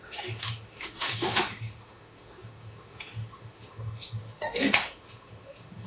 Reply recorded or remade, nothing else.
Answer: remade